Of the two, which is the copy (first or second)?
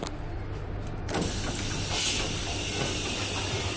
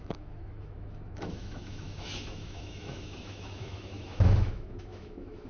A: second